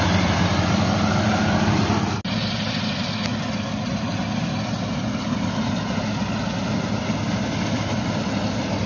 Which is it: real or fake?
real